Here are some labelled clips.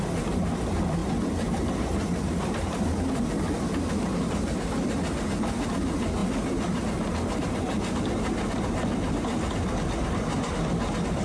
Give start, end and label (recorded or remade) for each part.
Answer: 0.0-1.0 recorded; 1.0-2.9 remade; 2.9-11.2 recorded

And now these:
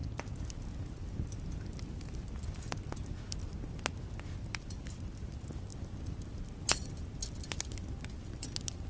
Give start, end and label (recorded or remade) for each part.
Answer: 0.0-8.9 recorded

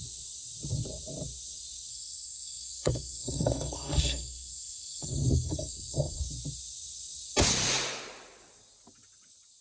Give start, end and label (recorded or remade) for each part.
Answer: 0.0-1.9 recorded; 1.9-6.2 remade; 6.2-9.6 recorded

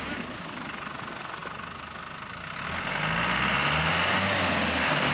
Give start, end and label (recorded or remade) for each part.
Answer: 0.0-5.1 recorded

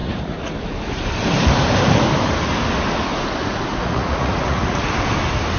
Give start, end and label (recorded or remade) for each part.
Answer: 0.0-0.5 remade; 0.5-3.7 recorded; 3.7-4.9 remade; 4.9-5.6 recorded